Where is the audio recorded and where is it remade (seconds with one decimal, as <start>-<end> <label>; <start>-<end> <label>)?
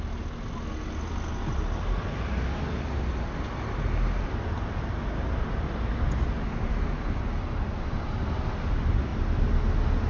0.0-10.1 recorded